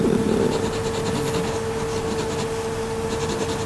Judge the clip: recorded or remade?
recorded